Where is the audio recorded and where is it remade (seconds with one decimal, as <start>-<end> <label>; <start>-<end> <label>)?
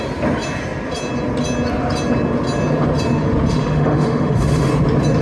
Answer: 0.0-3.5 recorded; 3.5-4.7 remade; 4.7-5.2 recorded